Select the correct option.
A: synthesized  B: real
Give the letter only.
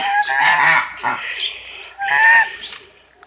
B